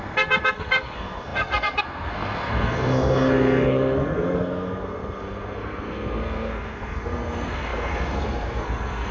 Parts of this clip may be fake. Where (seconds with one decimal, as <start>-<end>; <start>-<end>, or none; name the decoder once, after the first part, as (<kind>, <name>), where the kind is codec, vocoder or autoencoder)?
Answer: 0.0-9.1 (codec, SNAC)